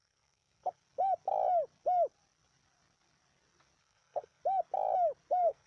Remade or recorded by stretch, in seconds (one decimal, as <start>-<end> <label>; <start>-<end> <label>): 0.0-0.8 remade; 0.8-3.8 recorded; 3.8-4.4 remade; 4.4-5.3 recorded; 5.3-5.7 remade